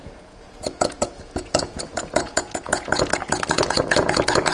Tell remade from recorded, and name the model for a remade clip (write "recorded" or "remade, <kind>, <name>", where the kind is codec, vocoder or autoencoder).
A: remade, vocoder, Vocos